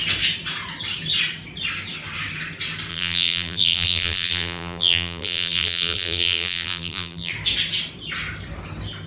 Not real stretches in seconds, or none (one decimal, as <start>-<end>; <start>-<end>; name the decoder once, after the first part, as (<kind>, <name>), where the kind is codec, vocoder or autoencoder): 2.9-7.3 (vocoder, BigVGAN v2)